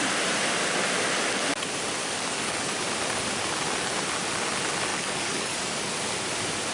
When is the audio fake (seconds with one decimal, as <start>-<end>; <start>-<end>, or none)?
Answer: 2.0-2.8; 4.9-5.9

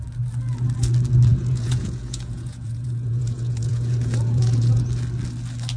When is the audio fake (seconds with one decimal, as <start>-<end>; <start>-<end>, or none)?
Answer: 1.3-4.8

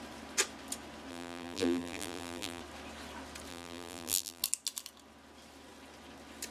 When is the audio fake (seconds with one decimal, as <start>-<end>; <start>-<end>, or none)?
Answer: 1.1-2.6; 3.5-4.4

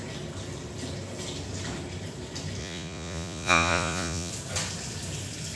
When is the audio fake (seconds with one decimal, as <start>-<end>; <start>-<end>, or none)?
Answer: 2.6-4.3

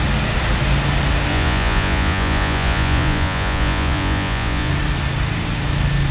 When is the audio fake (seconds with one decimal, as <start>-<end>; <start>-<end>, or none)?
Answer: 1.3-4.7

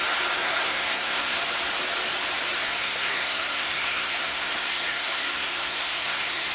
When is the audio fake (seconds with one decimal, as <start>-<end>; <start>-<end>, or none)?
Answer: 0.4-1.4; 2.6-6.5

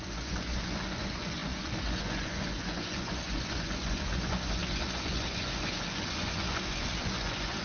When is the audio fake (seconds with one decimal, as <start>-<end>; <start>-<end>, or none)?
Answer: 0.0-7.6